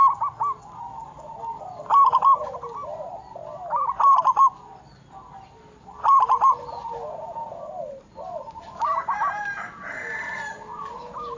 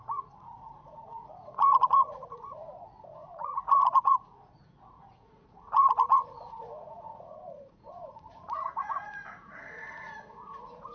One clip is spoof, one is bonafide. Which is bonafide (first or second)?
first